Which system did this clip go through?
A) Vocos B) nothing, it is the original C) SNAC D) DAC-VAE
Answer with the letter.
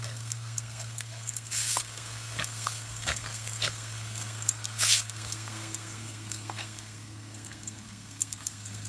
C